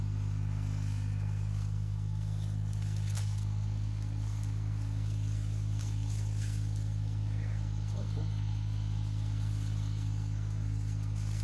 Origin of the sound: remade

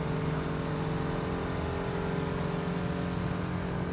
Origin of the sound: recorded